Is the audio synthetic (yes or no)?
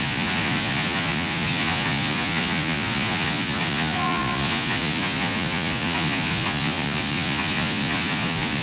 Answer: yes